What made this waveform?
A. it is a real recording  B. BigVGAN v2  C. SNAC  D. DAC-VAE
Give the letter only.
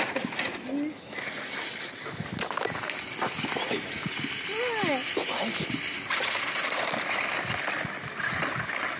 A